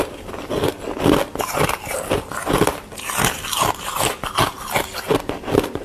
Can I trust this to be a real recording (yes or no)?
yes